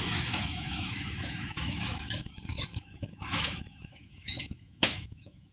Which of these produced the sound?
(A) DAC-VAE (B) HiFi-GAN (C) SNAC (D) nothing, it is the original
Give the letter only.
A